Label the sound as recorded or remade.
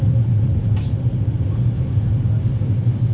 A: recorded